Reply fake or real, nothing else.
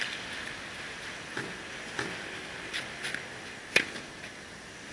real